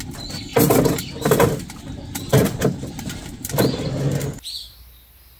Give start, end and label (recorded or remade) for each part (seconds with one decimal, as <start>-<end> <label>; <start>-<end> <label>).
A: 0.0-0.5 recorded; 0.5-3.7 remade; 3.7-5.4 recorded